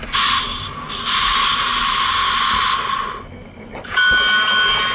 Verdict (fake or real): real